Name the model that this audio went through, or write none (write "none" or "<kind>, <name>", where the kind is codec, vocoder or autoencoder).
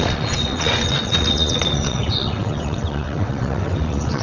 vocoder, WaveNeXt